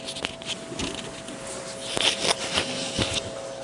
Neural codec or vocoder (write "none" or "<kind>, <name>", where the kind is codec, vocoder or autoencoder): none